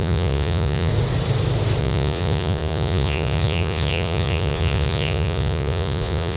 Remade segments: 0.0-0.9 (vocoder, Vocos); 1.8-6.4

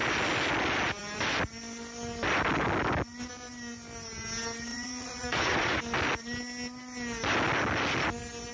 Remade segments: 4.7-5.8 (vocoder, Vocos)